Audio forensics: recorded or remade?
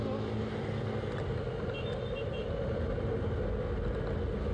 recorded